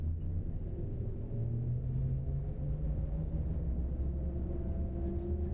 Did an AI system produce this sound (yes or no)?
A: no